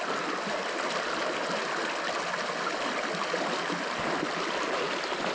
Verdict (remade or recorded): recorded